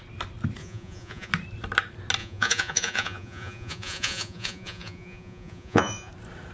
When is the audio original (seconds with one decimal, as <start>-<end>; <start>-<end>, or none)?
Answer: 0.0-0.6; 1.3-2.2; 6.1-6.5